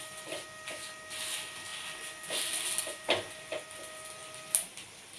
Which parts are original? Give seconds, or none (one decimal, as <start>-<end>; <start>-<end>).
0.0-5.2